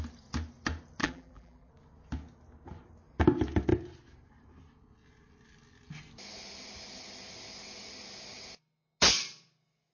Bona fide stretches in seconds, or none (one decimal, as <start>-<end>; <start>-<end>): 0.0-1.0; 1.7-9.9